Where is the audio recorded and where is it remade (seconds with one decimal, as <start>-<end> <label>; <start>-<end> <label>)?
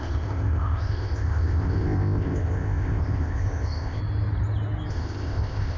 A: 0.0-4.0 remade; 4.0-4.9 recorded; 4.9-5.8 remade